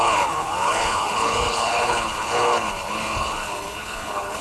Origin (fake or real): fake